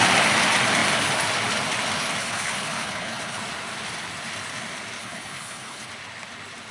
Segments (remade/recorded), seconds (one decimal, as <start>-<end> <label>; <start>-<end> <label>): 0.0-2.2 recorded; 2.2-3.4 remade; 3.4-5.0 recorded; 5.0-5.9 remade; 5.9-6.7 recorded